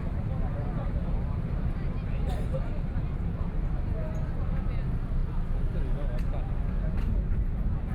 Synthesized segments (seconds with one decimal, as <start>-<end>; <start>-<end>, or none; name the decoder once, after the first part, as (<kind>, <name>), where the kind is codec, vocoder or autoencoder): none